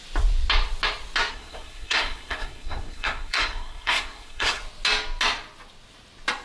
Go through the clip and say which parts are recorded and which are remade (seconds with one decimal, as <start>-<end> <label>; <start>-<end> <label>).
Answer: 0.0-1.3 recorded; 1.3-4.6 remade; 4.6-6.4 recorded